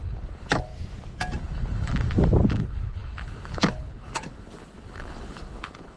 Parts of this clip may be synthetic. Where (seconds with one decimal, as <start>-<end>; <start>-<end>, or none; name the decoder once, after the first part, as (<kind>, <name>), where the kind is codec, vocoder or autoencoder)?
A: 0.0-0.7 (codec, HILCodec); 1.4-1.9; 2.5-6.0